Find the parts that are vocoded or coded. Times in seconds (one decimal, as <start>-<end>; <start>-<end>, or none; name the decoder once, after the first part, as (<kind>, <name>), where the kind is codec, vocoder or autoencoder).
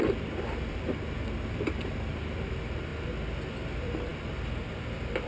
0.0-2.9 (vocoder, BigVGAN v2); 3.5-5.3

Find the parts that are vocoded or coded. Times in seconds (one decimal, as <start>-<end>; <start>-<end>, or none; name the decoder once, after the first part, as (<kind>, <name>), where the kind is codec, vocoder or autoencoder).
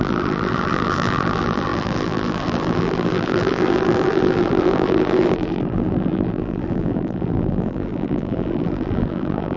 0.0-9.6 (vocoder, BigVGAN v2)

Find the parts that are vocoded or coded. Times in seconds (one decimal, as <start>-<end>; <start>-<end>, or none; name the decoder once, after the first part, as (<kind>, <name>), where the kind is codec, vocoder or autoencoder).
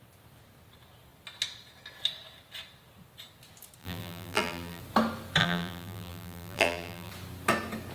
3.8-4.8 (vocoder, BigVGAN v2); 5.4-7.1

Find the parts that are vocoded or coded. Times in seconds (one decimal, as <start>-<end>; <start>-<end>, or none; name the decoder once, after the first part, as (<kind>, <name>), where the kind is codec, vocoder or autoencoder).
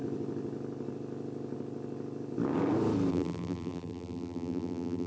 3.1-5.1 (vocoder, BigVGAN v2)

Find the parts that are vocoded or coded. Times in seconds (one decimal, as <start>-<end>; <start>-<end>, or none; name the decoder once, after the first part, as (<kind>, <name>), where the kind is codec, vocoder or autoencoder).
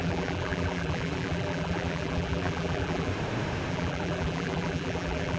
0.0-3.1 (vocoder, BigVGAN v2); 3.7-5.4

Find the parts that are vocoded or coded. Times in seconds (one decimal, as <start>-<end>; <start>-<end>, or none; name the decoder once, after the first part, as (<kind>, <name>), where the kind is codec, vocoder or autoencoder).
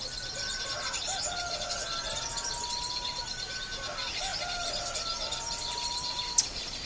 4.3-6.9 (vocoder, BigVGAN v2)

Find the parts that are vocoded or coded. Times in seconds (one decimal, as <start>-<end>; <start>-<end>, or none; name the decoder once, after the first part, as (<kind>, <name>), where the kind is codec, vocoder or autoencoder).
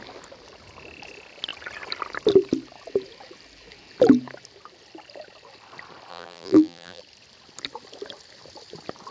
6.1-7.0 (vocoder, BigVGAN v2)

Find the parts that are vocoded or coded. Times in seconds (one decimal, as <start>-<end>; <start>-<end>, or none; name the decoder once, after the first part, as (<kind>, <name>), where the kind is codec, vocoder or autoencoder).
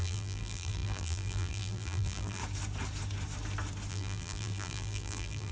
0.0-2.4 (vocoder, BigVGAN v2); 3.9-5.5